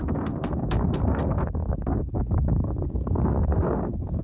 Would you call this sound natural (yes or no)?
no